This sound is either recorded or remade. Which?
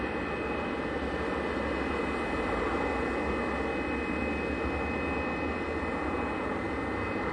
recorded